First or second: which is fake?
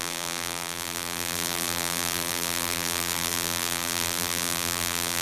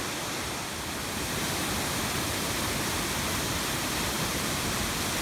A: first